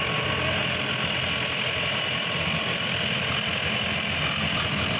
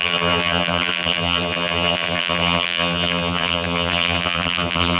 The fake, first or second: second